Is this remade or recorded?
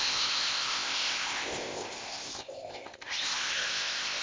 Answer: remade